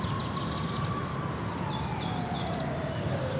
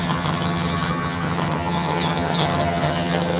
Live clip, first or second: first